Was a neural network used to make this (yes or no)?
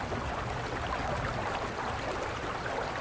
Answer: no